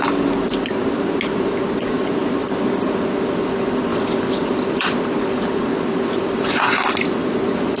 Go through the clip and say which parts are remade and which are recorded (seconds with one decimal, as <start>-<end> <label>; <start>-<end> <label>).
0.0-3.9 recorded; 3.9-6.7 remade; 6.7-7.8 recorded